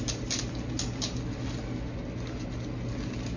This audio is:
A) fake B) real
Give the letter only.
B